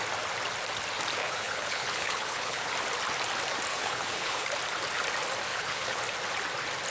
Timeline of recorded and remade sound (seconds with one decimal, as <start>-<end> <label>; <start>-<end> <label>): 0.0-1.2 recorded; 1.2-2.7 remade; 2.7-3.7 recorded; 3.7-4.5 remade; 4.5-5.5 recorded; 5.5-6.0 remade; 6.0-6.9 recorded